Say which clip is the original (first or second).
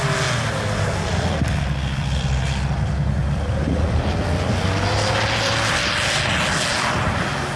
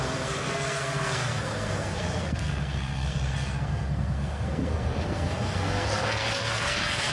first